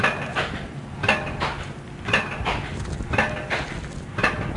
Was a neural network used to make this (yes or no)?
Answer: no